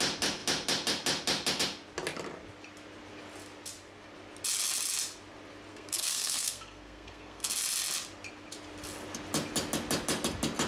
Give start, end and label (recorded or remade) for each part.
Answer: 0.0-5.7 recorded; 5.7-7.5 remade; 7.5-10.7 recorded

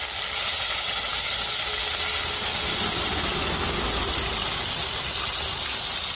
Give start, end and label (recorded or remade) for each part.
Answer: 0.0-6.1 recorded

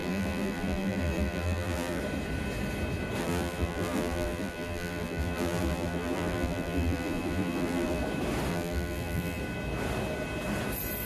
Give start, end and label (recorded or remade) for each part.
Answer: 0.0-2.0 remade; 2.0-3.2 recorded; 3.2-8.0 remade; 8.0-8.5 recorded; 8.5-9.4 remade; 9.4-11.1 recorded